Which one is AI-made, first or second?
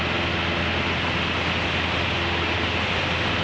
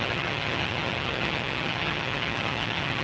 second